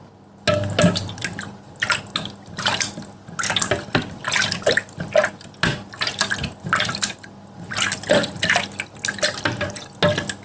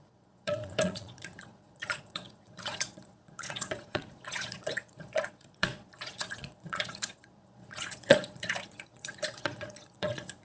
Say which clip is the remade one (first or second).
second